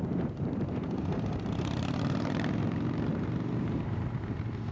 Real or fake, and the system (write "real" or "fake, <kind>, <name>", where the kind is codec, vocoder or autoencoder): fake, vocoder, BigVGAN v2